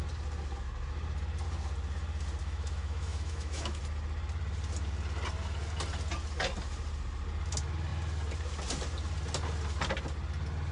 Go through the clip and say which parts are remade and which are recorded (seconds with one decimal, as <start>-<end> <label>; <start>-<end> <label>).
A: 0.0-2.4 recorded; 2.4-3.8 remade; 3.8-10.7 recorded